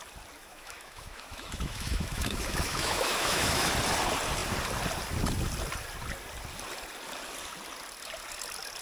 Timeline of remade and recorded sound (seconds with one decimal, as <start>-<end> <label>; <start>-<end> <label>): 0.0-0.4 recorded; 0.4-3.7 remade; 3.7-8.8 recorded